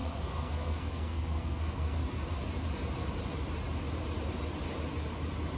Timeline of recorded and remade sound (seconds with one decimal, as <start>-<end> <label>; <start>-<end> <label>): 0.0-2.0 remade; 2.0-5.6 recorded